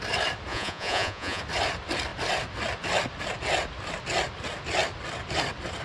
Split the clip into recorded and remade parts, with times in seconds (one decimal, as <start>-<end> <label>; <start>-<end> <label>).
0.0-0.5 recorded; 0.5-1.4 remade; 1.4-5.8 recorded